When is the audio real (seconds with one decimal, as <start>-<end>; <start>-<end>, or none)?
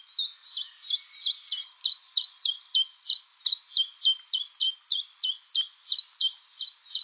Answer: 0.0-7.0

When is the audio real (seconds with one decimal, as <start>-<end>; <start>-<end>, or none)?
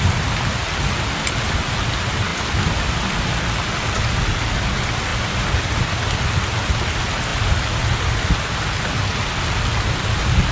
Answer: 0.0-10.5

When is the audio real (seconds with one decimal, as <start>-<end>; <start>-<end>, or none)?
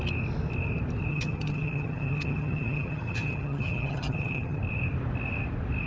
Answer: 0.0-1.1; 4.6-5.9